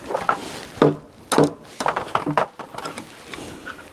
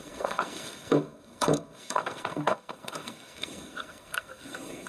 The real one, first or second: first